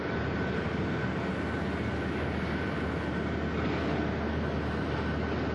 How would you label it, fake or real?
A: real